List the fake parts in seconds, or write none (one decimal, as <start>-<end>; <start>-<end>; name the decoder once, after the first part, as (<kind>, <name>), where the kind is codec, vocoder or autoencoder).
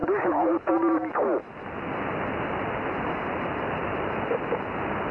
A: 0.0-0.7 (codec, HILCodec)